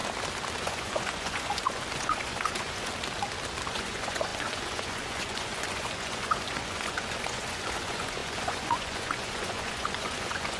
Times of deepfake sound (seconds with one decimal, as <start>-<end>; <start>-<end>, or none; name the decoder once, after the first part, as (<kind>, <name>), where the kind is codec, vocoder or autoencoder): 0.6-2.9 (vocoder, Vocos); 3.7-10.6